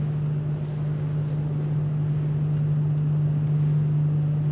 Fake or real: real